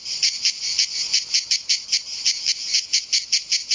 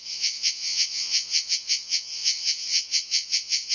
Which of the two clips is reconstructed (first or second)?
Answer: second